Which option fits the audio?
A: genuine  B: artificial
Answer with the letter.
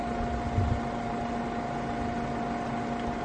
A